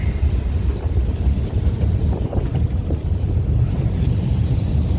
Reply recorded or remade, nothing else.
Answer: remade